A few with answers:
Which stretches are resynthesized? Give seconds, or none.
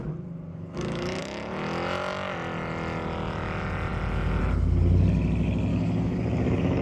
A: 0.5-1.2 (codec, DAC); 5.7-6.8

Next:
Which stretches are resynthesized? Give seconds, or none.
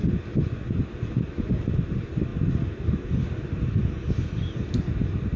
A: none